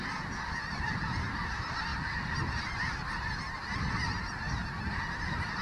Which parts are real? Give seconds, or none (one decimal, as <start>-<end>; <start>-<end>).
0.0-5.6